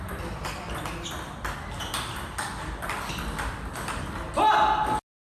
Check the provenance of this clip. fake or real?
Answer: real